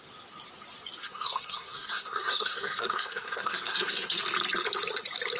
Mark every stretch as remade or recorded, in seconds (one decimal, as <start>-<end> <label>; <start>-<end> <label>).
0.0-1.0 recorded; 1.0-4.2 remade; 4.2-5.4 recorded